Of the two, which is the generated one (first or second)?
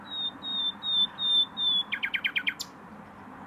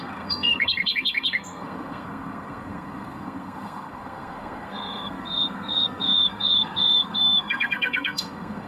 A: second